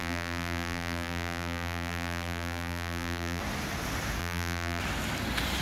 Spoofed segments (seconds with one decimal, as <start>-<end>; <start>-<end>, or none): 0.0-3.4; 4.2-4.8